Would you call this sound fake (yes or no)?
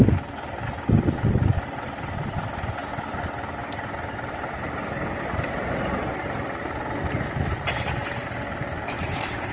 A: no